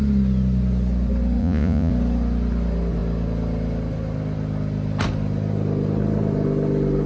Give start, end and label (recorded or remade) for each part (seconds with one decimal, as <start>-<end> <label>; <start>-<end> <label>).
0.0-1.4 recorded; 1.4-1.9 remade; 1.9-7.1 recorded